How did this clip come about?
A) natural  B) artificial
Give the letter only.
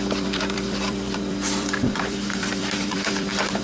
B